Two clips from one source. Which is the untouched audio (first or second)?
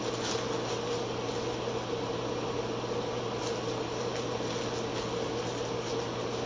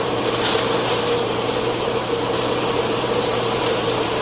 first